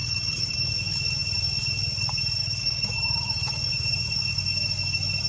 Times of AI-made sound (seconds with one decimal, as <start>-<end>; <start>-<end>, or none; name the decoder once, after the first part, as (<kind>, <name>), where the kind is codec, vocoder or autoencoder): 0.0-0.7 (autoencoder, DAC-VAE); 2.4-3.7